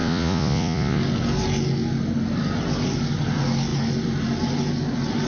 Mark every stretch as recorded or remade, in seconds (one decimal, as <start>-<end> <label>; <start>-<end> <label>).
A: 0.0-1.0 remade; 1.0-5.3 recorded

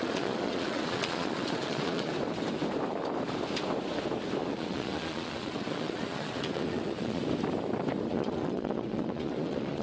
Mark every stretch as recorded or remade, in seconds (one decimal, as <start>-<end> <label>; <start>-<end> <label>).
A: 0.0-2.1 remade; 2.1-4.4 recorded; 4.4-7.2 remade; 7.2-8.1 recorded; 8.1-9.8 remade

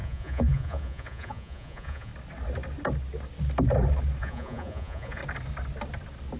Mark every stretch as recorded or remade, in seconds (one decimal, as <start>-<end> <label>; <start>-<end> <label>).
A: 0.0-2.1 remade; 2.1-4.2 recorded; 4.2-5.2 remade; 5.2-6.4 recorded

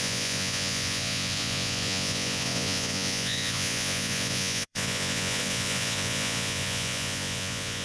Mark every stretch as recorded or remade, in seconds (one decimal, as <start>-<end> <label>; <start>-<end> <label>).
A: 0.0-7.8 remade

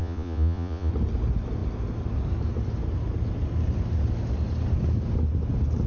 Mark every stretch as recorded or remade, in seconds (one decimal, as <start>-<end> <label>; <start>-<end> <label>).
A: 0.0-0.9 remade; 0.9-5.9 recorded

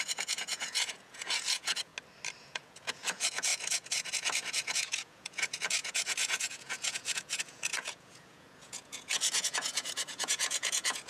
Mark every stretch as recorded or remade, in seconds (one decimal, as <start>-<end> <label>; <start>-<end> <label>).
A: 0.0-1.9 remade; 1.9-2.4 recorded; 2.4-11.1 remade